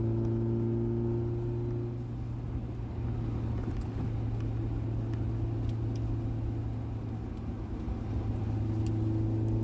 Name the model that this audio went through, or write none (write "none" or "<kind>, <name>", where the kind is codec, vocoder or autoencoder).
none